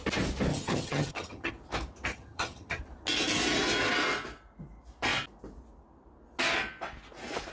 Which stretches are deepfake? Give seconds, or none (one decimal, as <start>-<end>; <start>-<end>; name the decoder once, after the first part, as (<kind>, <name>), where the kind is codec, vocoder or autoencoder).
0.5-1.5 (vocoder, HiFi-GAN); 2.1-2.8